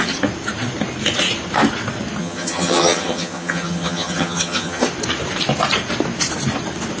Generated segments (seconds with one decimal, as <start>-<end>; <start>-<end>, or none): 2.2-4.8